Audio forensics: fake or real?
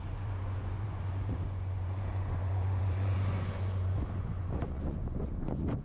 fake